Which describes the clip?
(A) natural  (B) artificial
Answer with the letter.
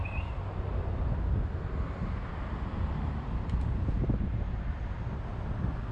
A